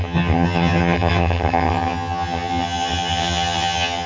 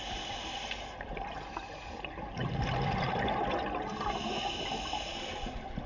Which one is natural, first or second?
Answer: second